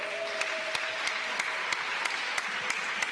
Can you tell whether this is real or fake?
real